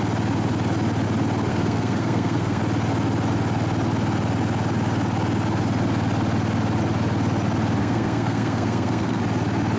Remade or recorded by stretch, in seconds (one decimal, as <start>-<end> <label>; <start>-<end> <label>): 0.0-1.5 recorded; 1.5-2.6 remade; 2.6-7.8 recorded; 7.8-9.2 remade; 9.2-9.8 recorded